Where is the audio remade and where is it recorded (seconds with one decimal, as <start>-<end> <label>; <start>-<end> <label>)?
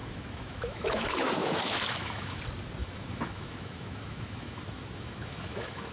0.0-2.4 remade; 2.4-2.8 recorded; 2.8-5.9 remade